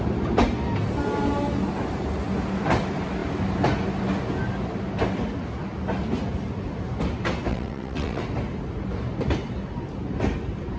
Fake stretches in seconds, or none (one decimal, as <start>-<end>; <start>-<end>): 7.5-8.2